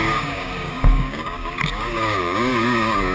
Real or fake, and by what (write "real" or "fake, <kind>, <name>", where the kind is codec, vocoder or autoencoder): fake, codec, DAC